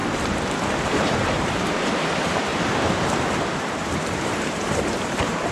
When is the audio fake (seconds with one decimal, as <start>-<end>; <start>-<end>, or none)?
0.7-2.5; 3.6-5.5